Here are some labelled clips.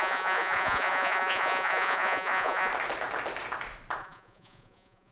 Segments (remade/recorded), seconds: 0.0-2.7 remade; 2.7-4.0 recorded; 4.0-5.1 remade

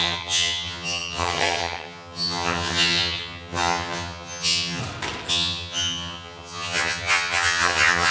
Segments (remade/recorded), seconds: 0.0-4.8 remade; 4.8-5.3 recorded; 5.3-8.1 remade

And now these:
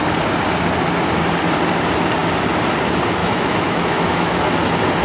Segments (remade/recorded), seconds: 0.0-3.2 recorded; 3.2-4.5 remade; 4.5-5.0 recorded